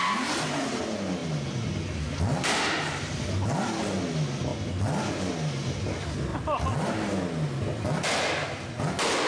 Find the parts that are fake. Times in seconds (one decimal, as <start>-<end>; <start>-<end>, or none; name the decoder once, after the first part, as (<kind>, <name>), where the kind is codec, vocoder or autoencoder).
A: none